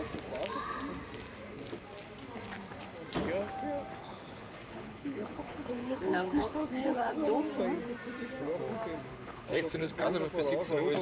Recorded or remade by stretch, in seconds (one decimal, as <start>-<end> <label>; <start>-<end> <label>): 0.0-4.0 recorded; 4.0-7.3 remade; 7.3-9.1 recorded; 9.1-9.9 remade; 9.9-11.0 recorded